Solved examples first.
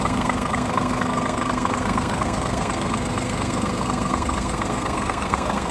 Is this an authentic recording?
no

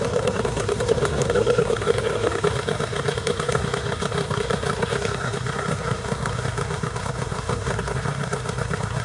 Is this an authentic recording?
no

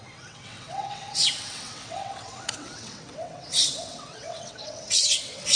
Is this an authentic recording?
no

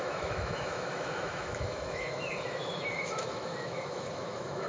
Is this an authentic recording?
no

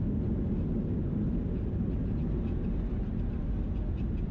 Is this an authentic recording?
yes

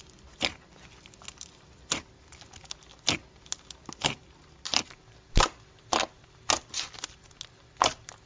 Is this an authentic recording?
yes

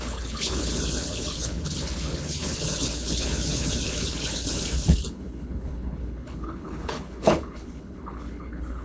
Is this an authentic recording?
no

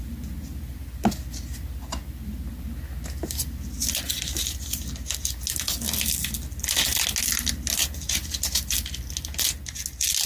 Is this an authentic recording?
yes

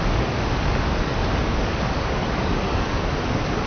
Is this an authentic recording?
no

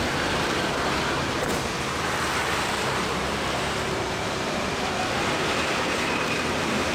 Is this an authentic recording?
no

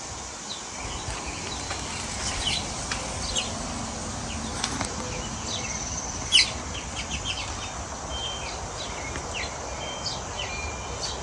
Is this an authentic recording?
yes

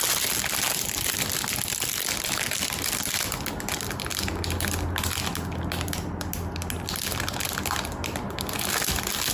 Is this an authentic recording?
yes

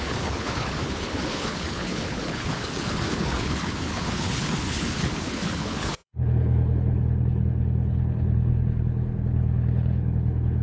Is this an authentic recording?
no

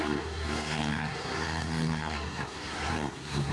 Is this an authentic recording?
no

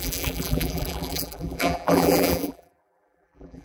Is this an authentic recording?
no